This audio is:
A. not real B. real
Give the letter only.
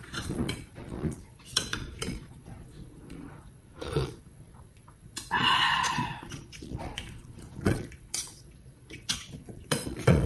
A